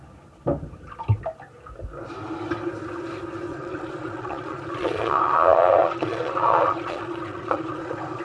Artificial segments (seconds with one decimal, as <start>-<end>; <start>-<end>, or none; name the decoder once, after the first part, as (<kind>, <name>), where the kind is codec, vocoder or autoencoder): 3.5-8.2 (vocoder, Vocos)